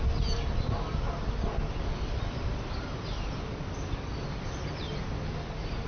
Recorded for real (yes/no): yes